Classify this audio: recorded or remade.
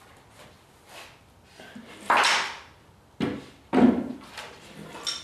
recorded